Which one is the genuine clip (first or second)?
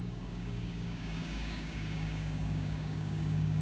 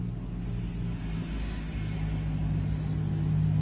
second